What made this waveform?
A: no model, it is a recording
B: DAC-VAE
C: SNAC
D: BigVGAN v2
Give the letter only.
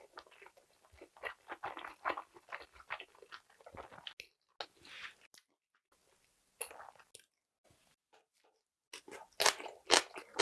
A